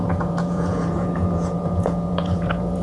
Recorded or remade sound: remade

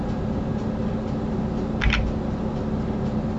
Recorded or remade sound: recorded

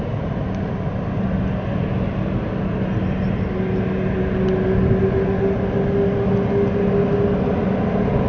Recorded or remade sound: recorded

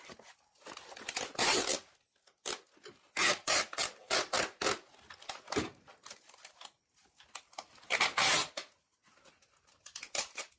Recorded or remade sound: recorded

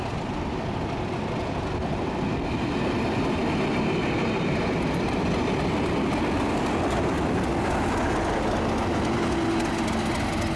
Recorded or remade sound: recorded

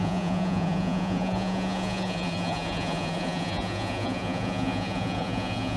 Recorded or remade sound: remade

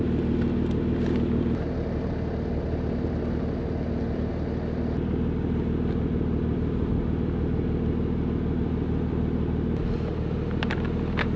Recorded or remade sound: recorded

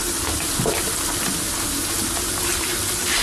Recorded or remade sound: recorded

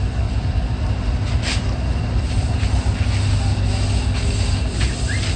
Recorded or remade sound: recorded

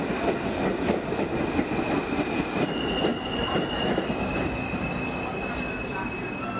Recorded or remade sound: recorded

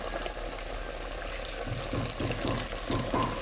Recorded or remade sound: recorded